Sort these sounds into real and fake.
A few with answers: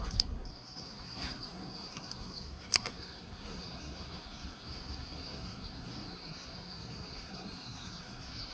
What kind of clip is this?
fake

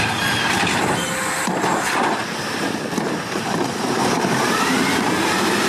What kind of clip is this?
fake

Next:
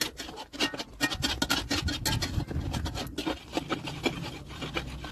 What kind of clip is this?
real